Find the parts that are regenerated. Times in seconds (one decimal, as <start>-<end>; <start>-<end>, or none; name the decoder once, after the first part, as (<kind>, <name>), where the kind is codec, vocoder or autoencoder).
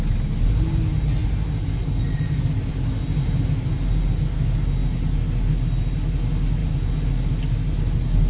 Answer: none